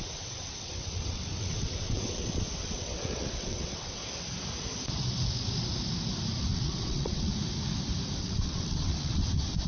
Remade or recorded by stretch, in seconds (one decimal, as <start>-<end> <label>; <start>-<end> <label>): 0.0-4.0 remade; 4.0-6.4 recorded; 6.4-7.3 remade; 7.3-8.2 recorded; 8.2-9.7 remade